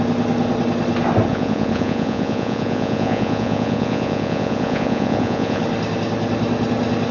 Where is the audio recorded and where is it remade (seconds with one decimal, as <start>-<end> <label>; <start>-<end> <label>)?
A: 0.0-1.3 recorded; 1.3-5.6 remade; 5.6-7.1 recorded